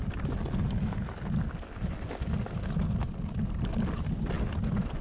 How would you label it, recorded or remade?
recorded